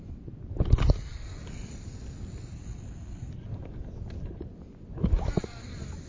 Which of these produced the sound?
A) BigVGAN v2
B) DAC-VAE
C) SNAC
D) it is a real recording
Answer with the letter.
D